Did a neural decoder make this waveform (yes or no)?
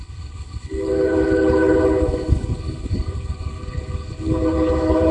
yes